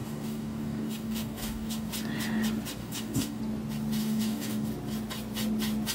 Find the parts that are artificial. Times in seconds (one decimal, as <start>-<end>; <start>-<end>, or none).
0.0-1.9; 2.8-3.4; 4.0-4.7